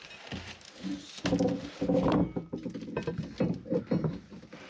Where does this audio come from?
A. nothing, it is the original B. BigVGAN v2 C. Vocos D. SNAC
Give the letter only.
A